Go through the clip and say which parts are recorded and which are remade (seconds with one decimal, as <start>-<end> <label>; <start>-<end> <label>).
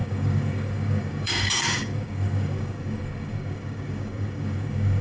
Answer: 0.0-5.0 remade